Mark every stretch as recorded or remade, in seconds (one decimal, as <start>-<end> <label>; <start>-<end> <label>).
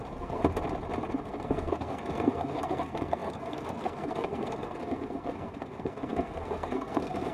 0.0-0.4 remade; 0.4-1.1 recorded; 1.1-7.3 remade